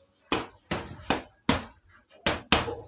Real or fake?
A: real